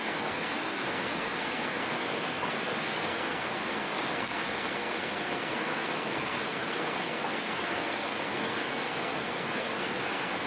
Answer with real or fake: fake